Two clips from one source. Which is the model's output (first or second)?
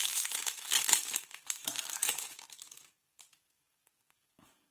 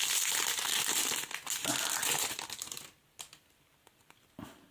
first